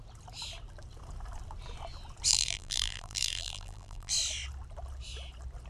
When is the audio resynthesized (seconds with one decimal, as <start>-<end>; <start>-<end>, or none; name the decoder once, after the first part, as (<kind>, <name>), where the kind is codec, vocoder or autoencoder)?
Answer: 2.3-4.1 (vocoder, BigVGAN v2)